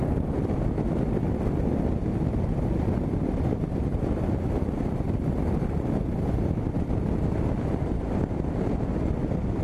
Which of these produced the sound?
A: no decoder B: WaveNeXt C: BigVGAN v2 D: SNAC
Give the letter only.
A